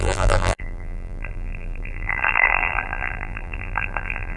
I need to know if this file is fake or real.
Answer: fake